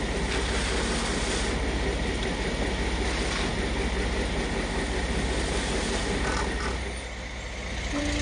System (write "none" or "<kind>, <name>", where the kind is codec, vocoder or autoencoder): none